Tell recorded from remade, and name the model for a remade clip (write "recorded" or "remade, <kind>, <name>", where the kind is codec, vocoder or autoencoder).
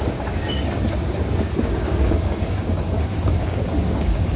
remade, codec, DAC